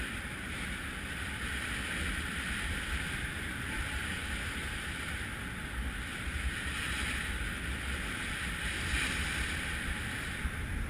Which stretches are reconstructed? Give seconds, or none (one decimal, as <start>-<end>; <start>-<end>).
0.0-10.9